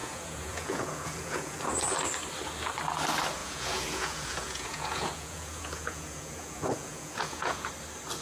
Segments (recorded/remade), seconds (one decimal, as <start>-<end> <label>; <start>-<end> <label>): 0.0-1.6 remade; 1.6-3.4 recorded; 3.4-7.7 remade; 7.7-8.2 recorded